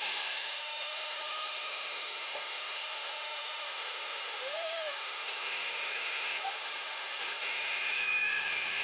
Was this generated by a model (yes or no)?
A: yes